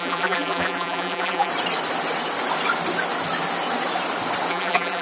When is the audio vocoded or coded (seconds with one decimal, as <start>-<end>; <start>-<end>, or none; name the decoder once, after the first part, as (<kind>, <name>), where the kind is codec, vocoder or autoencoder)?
0.0-1.5 (vocoder, BigVGAN v2); 4.5-5.0